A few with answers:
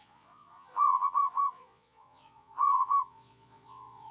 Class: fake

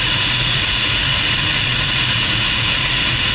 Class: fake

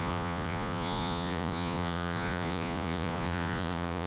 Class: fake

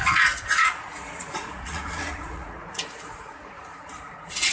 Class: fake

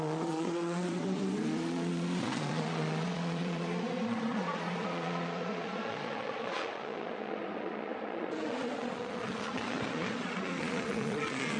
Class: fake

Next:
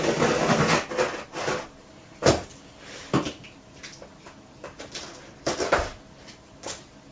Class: real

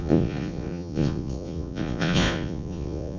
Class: fake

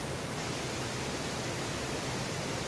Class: real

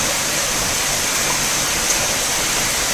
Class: real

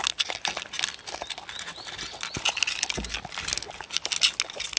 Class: real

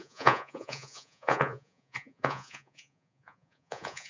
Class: fake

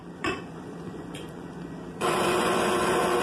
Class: fake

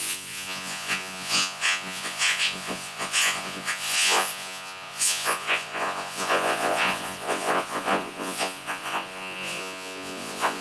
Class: fake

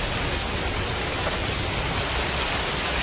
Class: real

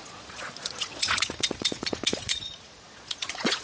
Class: fake